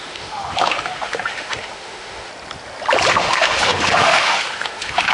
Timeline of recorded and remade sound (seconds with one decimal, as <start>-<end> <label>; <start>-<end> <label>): 0.0-2.3 remade; 2.3-3.1 recorded; 3.1-5.1 remade